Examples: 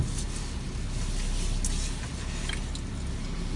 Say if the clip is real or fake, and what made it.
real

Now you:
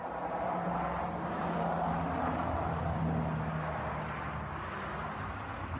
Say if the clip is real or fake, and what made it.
real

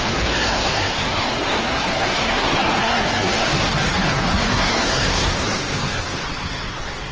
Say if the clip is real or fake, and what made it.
fake, codec, SNAC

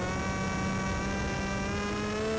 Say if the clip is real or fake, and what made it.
real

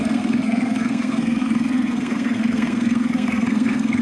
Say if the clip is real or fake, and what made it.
fake, codec, SNAC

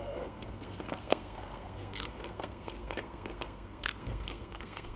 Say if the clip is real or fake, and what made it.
fake, codec, SNAC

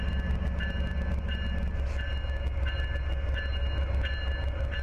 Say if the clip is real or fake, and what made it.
real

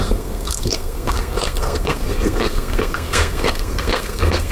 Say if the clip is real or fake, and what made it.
fake, codec, SNAC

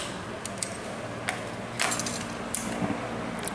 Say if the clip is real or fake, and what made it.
real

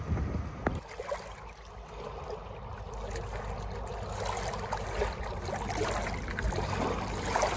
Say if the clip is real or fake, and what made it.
real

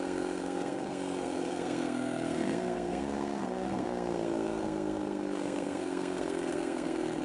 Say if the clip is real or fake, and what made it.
fake, codec, SNAC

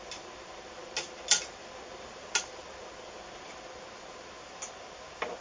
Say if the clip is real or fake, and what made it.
real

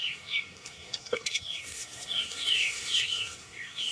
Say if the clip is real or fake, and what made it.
fake, codec, SNAC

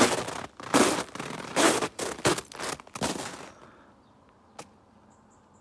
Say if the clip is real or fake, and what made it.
real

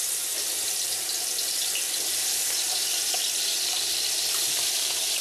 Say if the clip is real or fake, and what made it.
real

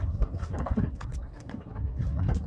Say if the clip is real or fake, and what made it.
fake, codec, SNAC